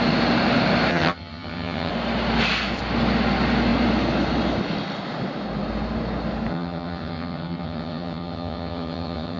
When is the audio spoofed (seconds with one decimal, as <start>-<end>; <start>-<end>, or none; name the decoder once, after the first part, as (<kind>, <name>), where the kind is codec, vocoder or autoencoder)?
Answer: 0.9-1.9 (vocoder, HiFi-GAN); 6.5-9.4